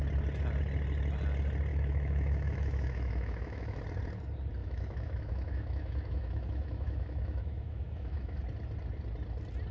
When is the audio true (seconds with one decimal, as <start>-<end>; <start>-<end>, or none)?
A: 0.0-1.7; 3.8-4.6; 8.4-9.7